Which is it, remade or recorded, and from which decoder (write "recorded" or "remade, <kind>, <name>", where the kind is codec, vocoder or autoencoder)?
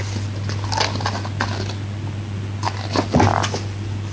recorded